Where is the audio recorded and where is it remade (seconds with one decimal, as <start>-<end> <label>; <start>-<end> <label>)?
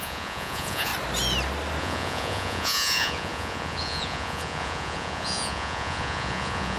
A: 0.0-0.9 remade; 0.9-1.8 recorded; 1.8-6.8 remade